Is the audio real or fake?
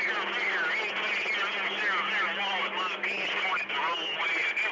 real